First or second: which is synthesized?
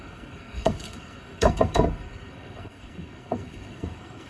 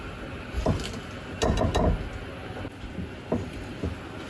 first